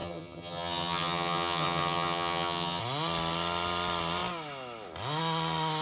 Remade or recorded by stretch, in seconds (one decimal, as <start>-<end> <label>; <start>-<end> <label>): 0.0-2.8 remade; 2.8-5.8 recorded